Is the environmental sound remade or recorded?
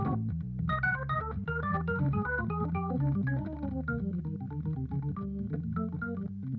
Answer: recorded